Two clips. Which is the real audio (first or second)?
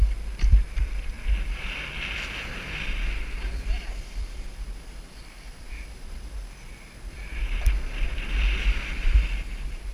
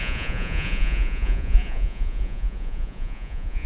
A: first